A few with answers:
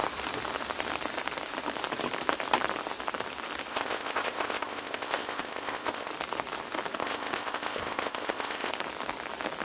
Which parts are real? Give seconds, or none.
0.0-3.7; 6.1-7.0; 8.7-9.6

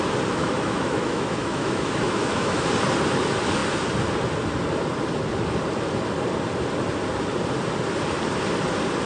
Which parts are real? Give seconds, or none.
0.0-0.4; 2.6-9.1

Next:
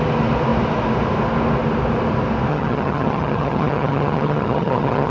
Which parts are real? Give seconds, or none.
0.0-2.5